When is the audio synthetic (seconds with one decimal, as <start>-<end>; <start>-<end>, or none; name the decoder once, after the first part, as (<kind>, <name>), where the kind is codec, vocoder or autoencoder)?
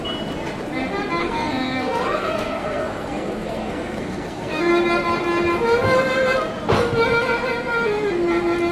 1.2-4.7 (codec, SNAC)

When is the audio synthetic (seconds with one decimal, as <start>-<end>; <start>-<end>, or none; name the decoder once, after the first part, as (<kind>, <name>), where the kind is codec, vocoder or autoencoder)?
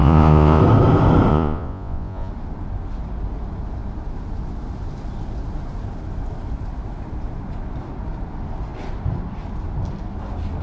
0.0-0.6 (vocoder, Vocos); 1.3-2.3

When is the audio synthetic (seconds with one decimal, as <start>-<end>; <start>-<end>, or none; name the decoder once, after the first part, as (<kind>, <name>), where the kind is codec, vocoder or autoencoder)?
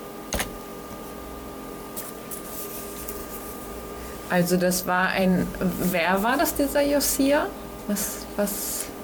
3.2-6.4 (vocoder, BigVGAN v2)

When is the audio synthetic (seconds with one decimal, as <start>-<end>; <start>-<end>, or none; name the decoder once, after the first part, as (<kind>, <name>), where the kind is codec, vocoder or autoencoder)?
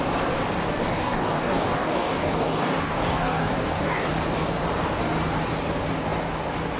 0.9-4.1 (codec, DAC)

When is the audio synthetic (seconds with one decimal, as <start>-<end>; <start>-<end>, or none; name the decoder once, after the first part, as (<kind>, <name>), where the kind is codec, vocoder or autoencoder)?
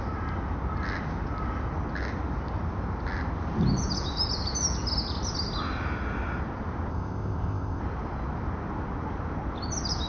6.9-7.8 (codec, ZipCodec)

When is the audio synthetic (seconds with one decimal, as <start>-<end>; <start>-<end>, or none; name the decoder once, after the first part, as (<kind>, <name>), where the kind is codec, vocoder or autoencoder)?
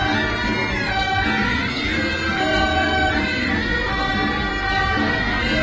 2.5-3.1 (vocoder, Vocos)